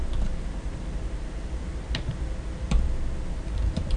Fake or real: real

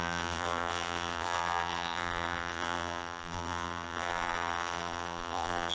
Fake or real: fake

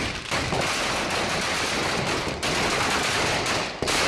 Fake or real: real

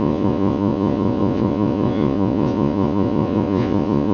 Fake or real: fake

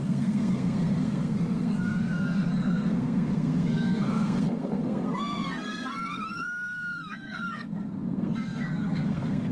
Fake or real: fake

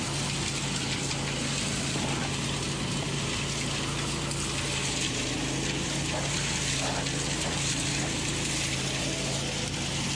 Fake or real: real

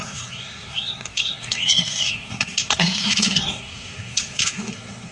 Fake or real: fake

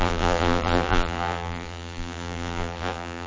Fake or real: fake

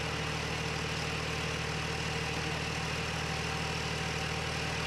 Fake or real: real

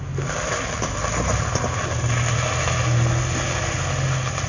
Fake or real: real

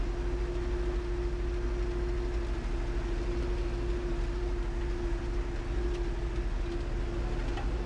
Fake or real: real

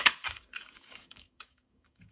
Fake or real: fake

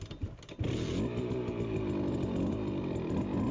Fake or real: real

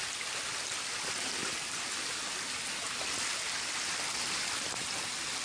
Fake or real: real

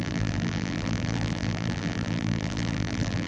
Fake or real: fake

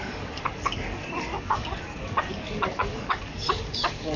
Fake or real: fake